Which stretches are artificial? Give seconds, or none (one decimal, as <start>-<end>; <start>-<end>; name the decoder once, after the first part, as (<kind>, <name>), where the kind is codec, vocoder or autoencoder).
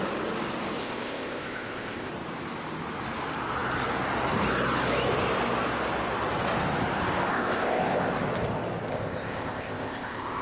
0.8-2.1 (codec, ZipCodec); 7.3-8.1; 8.9-10.4